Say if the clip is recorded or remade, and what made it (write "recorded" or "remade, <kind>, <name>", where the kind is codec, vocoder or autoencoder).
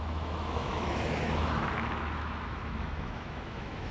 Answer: remade, autoencoder, DAC-VAE